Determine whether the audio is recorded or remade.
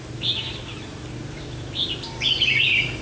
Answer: remade